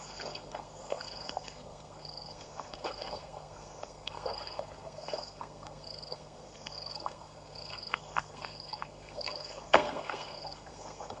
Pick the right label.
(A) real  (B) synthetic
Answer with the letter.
B